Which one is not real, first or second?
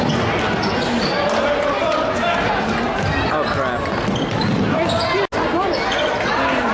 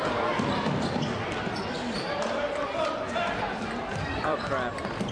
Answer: second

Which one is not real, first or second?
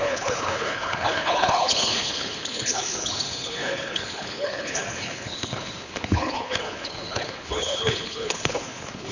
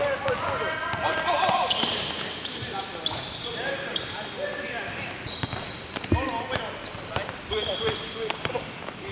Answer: first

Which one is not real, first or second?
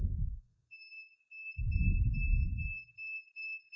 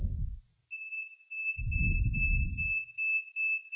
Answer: first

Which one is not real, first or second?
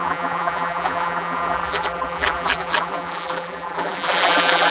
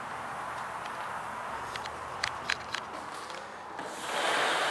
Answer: first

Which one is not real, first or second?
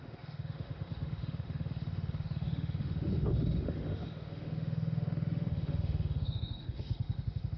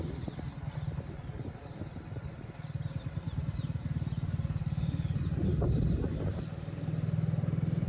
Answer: first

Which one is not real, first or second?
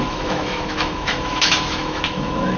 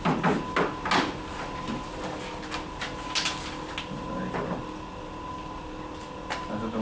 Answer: first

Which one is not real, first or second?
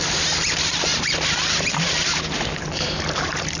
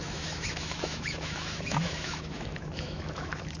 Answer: second